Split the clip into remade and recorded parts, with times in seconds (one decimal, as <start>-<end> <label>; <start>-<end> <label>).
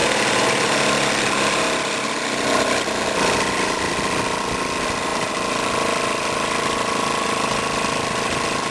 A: 0.0-3.9 remade; 3.9-5.1 recorded; 5.1-7.2 remade; 7.2-8.7 recorded